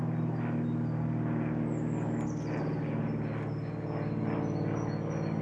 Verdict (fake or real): real